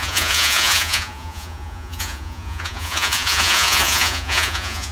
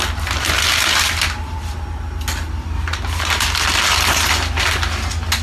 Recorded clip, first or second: second